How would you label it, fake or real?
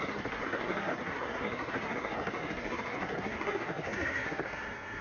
fake